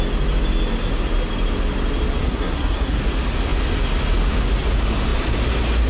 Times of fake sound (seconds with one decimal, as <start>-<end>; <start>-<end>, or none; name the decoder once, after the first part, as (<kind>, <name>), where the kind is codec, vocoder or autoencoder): 2.2-3.0 (codec, SNAC)